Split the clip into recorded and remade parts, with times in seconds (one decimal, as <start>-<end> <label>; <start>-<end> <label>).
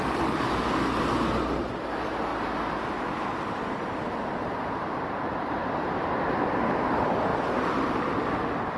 0.0-2.3 recorded; 2.3-6.5 remade; 6.5-7.3 recorded; 7.3-8.1 remade; 8.1-8.8 recorded